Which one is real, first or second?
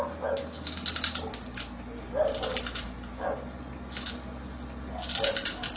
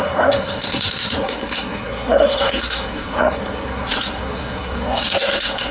first